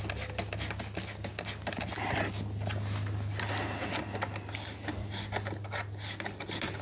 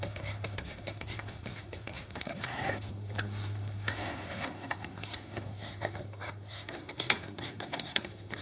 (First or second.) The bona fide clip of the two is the first